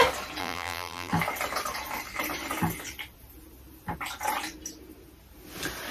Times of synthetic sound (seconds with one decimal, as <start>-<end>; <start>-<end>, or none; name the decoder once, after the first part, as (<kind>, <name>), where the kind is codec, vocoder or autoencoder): 0.4-1.1 (vocoder, BigVGAN v2)

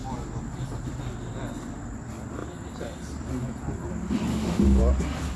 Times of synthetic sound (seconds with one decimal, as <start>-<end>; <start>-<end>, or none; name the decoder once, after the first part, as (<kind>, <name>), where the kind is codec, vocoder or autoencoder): 4.3-4.8 (autoencoder, DAC-VAE)